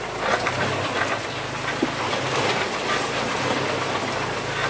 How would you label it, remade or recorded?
recorded